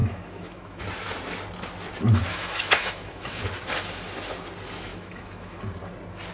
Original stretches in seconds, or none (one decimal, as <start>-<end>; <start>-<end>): 0.8-2.3; 3.4-4.9; 5.6-6.3